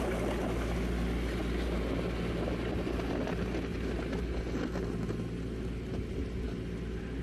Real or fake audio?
real